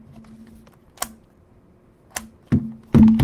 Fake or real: real